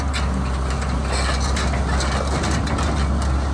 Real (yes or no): yes